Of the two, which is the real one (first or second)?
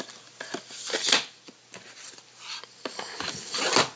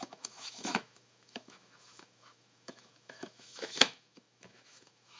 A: first